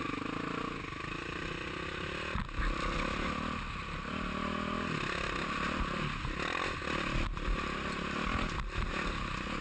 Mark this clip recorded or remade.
recorded